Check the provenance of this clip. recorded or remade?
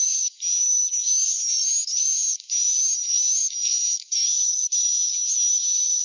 remade